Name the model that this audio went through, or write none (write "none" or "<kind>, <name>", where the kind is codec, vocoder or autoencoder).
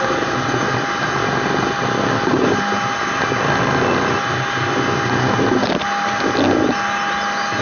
none